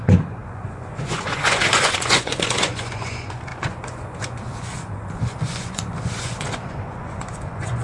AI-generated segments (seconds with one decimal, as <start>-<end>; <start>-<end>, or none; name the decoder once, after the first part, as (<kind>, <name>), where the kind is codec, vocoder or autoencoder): 0.0-7.8 (vocoder, Vocos)